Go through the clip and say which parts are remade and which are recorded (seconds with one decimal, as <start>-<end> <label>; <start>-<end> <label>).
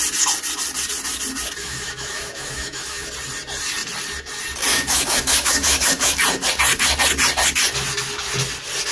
0.0-1.6 recorded; 1.6-3.1 remade; 3.1-4.7 recorded; 4.7-6.2 remade; 6.2-8.9 recorded